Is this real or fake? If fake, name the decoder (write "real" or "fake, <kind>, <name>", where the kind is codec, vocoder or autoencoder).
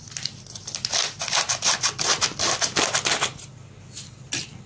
real